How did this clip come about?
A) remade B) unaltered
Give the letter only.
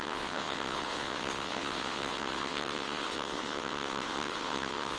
A